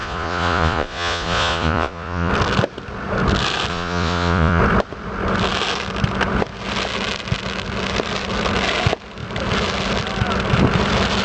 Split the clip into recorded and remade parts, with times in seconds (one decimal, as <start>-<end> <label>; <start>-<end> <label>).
0.0-2.3 remade; 2.3-3.7 recorded; 3.7-4.6 remade; 4.6-11.2 recorded